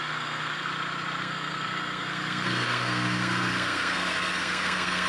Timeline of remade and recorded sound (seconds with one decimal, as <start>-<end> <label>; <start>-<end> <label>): 0.0-0.7 remade; 0.7-1.2 recorded; 1.2-5.1 remade